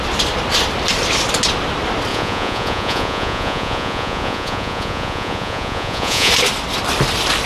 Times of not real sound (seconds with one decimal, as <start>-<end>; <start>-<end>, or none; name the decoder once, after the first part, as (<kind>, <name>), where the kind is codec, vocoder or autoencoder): 2.1-6.3 (vocoder, Vocos)